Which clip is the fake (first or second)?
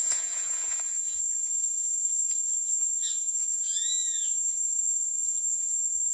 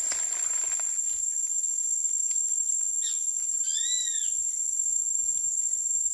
first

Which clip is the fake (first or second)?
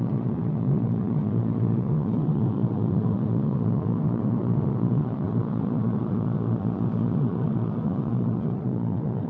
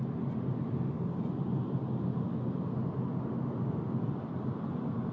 first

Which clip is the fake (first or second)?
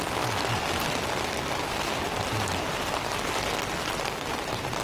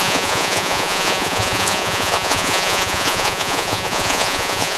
second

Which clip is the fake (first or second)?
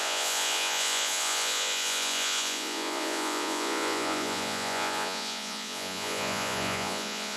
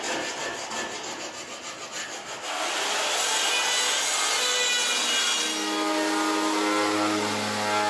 first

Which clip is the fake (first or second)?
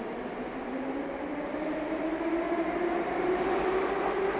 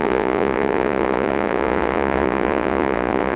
second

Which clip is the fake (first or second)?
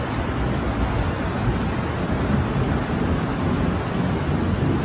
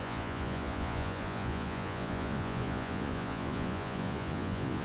second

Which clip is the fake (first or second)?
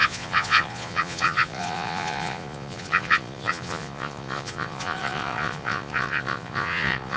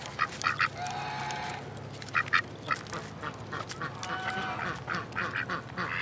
first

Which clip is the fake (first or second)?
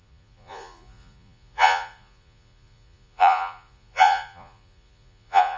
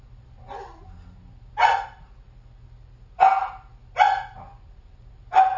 first